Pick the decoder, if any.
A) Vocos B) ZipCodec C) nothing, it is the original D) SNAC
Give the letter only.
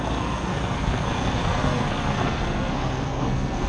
D